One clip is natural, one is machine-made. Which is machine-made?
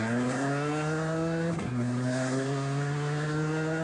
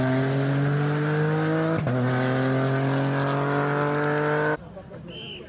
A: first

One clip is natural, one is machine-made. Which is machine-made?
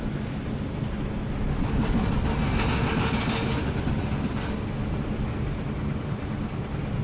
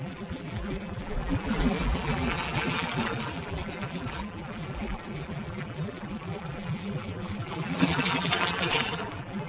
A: second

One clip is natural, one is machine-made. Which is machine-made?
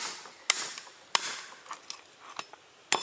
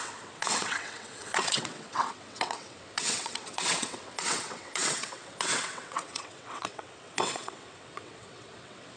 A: second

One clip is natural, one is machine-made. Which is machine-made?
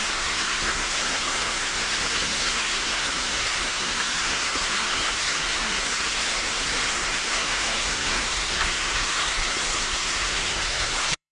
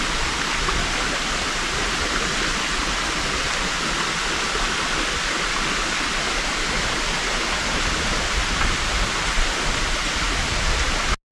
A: first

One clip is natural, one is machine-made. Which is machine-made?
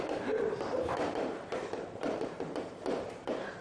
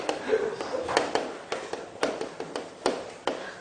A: first